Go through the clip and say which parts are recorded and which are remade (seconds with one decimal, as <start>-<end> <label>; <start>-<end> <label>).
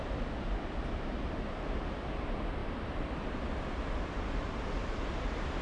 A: 0.0-2.6 recorded; 2.6-5.6 remade